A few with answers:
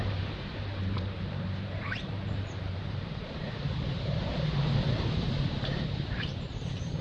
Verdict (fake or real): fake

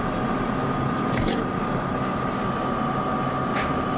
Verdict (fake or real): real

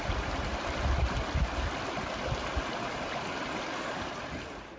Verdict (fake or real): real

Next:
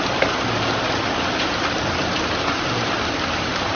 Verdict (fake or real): real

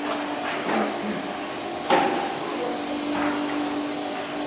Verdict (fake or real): real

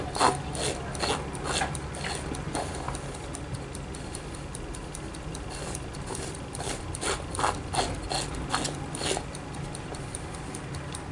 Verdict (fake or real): real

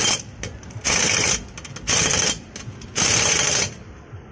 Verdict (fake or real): real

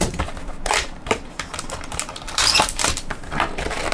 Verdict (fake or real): fake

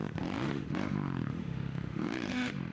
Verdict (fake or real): fake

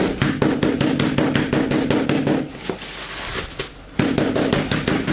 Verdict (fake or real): real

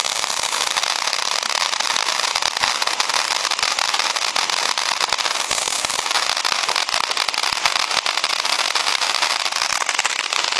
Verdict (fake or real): real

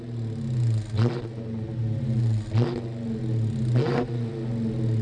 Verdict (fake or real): real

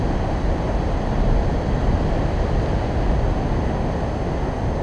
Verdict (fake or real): real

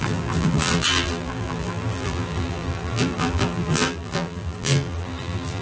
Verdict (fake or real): fake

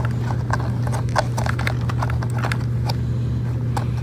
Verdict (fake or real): real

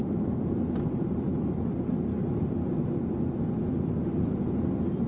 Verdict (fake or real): real